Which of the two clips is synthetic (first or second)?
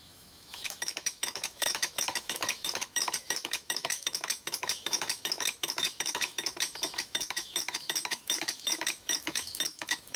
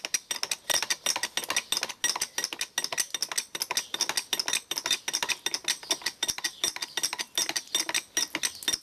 first